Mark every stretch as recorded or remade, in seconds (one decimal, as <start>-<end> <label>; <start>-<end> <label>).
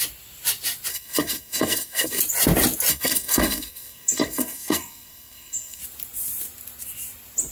0.0-0.9 recorded; 0.9-2.2 remade; 2.2-2.9 recorded; 2.9-5.8 remade; 5.8-7.5 recorded